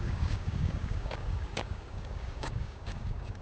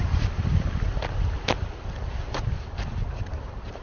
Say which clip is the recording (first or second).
second